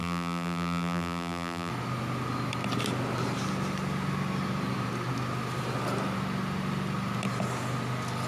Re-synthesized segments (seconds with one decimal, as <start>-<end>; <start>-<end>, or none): 0.0-1.7